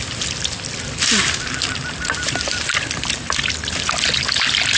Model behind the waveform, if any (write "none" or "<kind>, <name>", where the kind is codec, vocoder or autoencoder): none